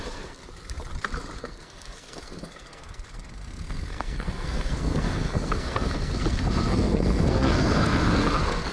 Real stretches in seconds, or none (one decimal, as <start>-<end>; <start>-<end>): 0.4-1.4